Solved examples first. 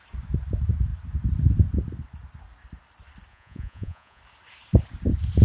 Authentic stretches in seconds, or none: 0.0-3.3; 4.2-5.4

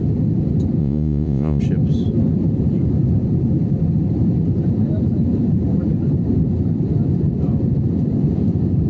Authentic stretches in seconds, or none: 0.0-0.8; 1.6-8.9

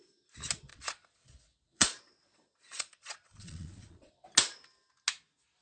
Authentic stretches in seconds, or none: 0.0-0.7; 4.1-5.6

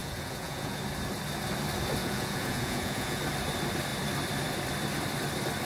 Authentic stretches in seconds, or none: 0.8-2.0; 3.2-5.6